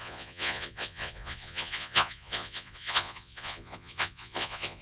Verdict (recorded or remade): remade